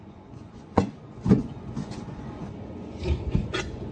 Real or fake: fake